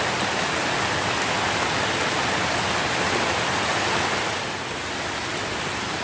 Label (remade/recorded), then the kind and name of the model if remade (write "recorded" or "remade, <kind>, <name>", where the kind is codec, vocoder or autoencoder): recorded